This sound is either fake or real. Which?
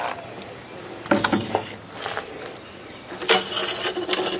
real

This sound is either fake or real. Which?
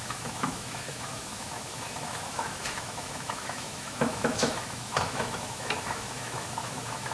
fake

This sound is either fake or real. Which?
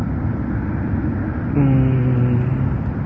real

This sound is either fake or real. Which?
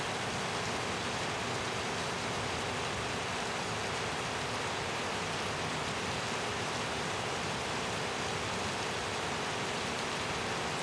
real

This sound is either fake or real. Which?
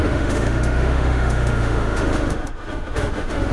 fake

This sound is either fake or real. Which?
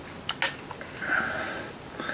real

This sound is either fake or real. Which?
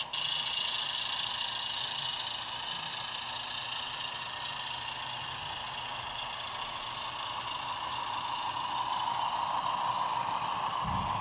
real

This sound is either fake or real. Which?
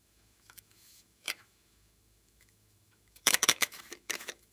fake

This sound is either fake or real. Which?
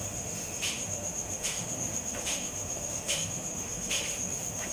fake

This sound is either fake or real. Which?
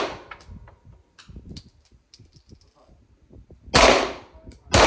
real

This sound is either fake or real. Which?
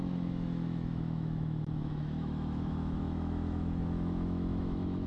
fake